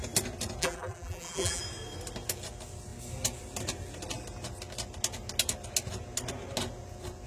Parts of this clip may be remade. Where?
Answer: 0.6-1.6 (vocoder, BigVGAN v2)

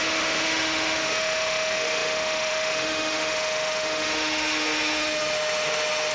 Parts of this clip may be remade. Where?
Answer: 0.0-6.1 (autoencoder, DAC-VAE)

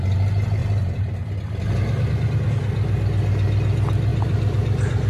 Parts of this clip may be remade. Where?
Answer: 4.1-5.1 (vocoder, BigVGAN v2)

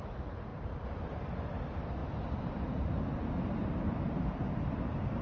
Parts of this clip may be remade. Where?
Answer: none

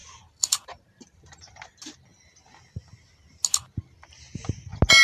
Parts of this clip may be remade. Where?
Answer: 0.0-1.5 (vocoder, BigVGAN v2)

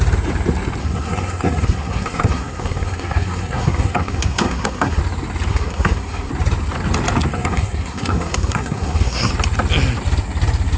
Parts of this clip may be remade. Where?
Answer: 0.8-5.0 (codec, SNAC); 5.5-6.3; 7.3-9.3

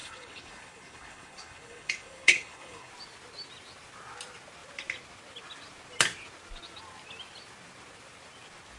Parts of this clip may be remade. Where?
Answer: 0.0-2.9 (codec, HILCodec)

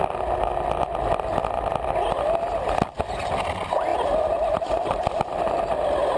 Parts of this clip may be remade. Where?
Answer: none